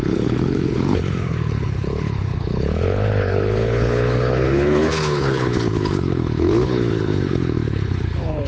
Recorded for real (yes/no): no